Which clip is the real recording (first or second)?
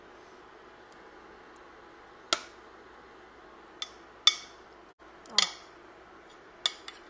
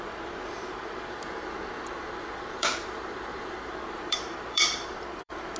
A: first